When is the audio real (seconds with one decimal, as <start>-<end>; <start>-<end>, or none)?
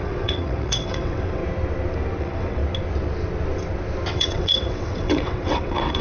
1.4-2.2; 2.6-4.1